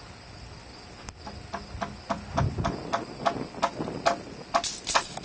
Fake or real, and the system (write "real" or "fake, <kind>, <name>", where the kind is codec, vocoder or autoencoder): real